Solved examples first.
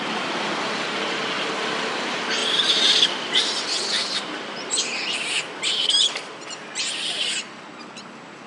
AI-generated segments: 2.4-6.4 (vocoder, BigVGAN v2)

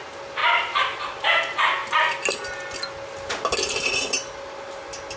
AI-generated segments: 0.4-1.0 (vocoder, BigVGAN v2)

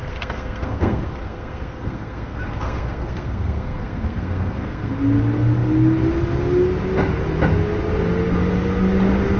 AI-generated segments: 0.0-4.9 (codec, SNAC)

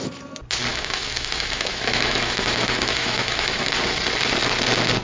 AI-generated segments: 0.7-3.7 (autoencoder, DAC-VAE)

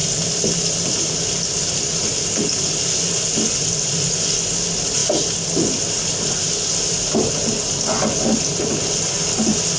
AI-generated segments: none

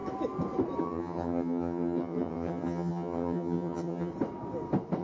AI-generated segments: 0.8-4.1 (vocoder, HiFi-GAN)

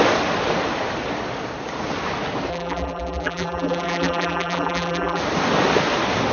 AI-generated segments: 2.5-5.2 (vocoder, BigVGAN v2)

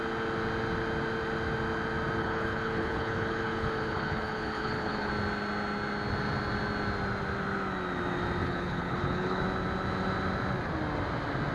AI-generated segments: 2.2-5.1 (codec, HILCodec); 8.4-9.4